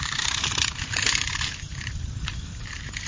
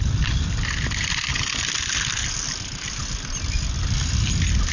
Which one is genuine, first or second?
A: second